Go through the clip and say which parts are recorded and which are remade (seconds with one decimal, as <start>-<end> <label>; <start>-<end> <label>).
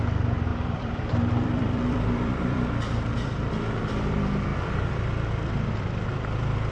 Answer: 0.0-0.5 recorded; 0.5-3.5 remade; 3.5-4.5 recorded; 4.5-6.7 remade